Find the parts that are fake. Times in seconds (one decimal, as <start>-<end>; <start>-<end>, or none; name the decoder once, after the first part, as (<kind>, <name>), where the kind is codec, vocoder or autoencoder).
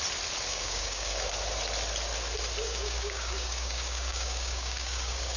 0.5-1.3 (codec, DAC); 2.6-5.4